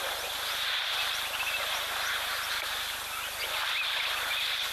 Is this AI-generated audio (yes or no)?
no